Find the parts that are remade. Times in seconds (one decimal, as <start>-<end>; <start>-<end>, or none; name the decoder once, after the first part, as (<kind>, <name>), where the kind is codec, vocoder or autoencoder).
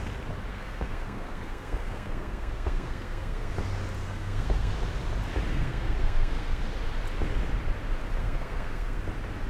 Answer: 0.5-3.5 (codec, SNAC); 4.0-4.7; 5.5-6.6; 8.2-9.0